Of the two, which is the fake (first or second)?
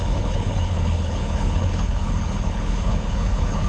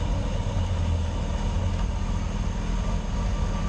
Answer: first